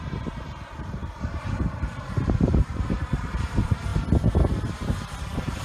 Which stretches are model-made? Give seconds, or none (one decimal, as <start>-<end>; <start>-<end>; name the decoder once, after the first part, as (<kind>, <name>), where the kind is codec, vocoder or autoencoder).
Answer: 0.0-3.9 (vocoder, BigVGAN v2); 4.7-5.6